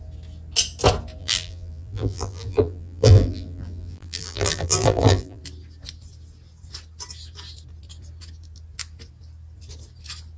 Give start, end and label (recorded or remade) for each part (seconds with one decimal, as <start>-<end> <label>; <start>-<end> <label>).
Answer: 0.0-1.2 recorded; 1.2-5.4 remade; 5.4-10.4 recorded